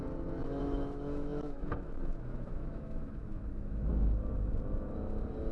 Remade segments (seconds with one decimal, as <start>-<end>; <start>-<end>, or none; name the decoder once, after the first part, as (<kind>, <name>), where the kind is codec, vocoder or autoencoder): 0.6-3.9 (autoencoder, DAC-VAE)